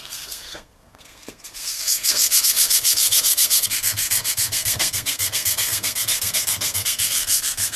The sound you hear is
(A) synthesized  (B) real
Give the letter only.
A